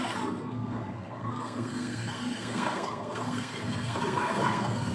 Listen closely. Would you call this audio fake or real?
fake